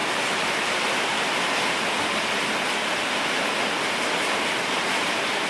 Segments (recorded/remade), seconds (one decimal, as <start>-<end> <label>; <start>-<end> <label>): 0.0-5.5 recorded